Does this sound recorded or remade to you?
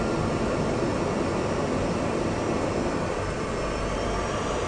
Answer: recorded